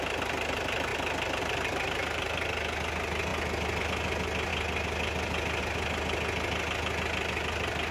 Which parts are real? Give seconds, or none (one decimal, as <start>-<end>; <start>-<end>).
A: 0.0-7.9